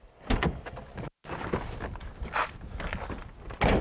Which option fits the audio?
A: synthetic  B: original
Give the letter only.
B